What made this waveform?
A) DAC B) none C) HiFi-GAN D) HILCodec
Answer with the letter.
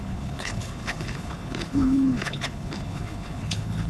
D